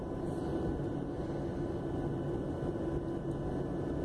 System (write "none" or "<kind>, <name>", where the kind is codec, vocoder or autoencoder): none